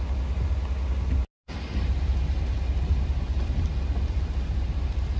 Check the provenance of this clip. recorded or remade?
recorded